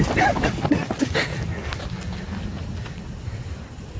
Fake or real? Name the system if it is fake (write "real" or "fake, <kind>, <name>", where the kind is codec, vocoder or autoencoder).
real